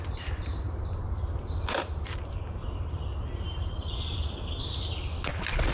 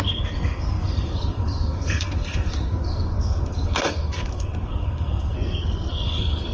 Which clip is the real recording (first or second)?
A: first